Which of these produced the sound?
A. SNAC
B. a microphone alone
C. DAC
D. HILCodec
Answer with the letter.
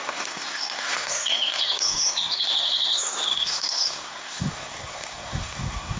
A